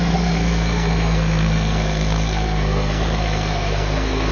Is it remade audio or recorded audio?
remade